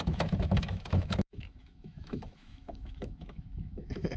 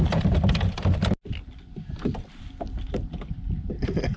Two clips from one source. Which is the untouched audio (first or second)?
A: second